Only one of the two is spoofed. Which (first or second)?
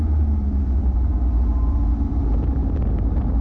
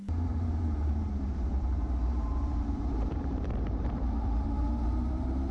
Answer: second